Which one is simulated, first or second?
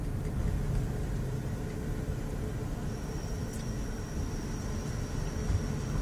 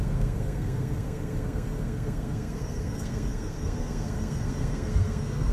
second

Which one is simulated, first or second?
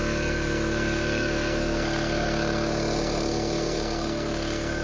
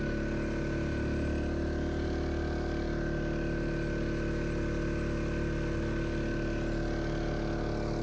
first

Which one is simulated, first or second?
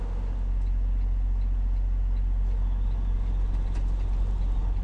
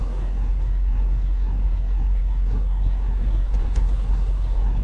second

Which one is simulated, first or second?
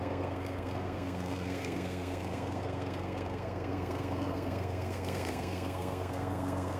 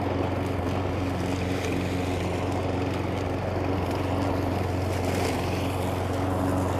first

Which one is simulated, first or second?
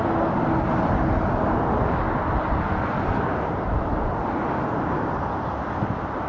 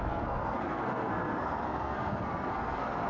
second